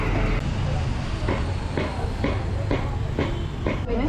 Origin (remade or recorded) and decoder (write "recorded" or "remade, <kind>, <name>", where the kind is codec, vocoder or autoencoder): recorded